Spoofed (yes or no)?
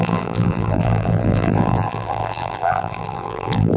yes